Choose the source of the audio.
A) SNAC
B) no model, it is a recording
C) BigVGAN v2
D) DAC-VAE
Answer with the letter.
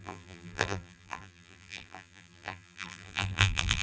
C